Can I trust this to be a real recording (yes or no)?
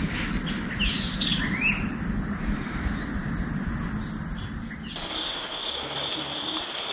yes